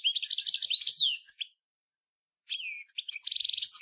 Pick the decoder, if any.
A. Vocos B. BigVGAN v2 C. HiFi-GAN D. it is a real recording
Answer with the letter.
D